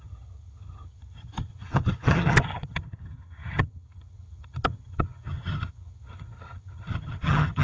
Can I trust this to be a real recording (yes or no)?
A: no